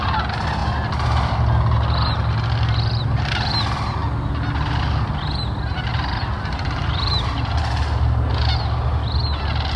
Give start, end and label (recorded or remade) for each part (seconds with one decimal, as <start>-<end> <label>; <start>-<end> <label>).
0.0-0.6 recorded; 0.6-1.4 remade; 1.4-5.9 recorded; 5.9-7.6 remade; 7.6-9.8 recorded